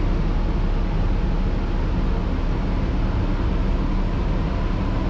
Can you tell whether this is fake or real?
real